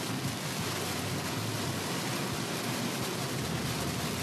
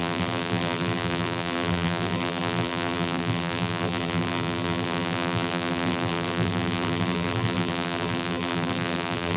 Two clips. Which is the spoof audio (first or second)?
second